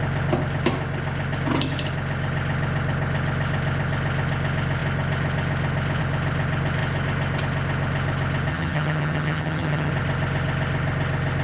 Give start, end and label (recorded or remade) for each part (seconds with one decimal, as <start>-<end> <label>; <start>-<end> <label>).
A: 0.0-8.5 recorded; 8.5-9.9 remade; 9.9-11.4 recorded